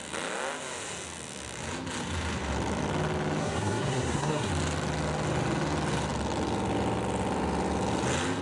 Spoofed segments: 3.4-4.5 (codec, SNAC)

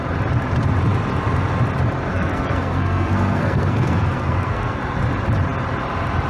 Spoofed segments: 2.1-4.8 (codec, SNAC)

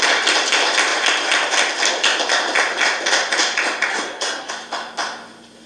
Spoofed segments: 3.9-4.5 (codec, SNAC)

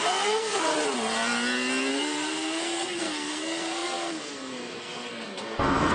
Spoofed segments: 0.0-0.7 (codec, SNAC); 1.9-5.9

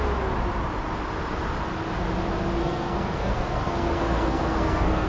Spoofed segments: 2.6-5.1 (codec, SNAC)

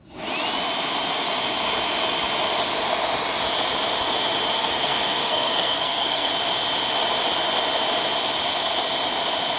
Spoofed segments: 4.6-6.3 (codec, SNAC)

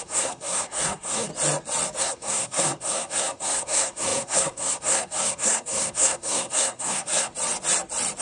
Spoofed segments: 0.0-1.3 (codec, SNAC); 2.0-7.3